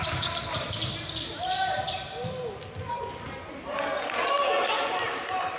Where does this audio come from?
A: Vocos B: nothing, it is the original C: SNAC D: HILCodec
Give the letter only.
B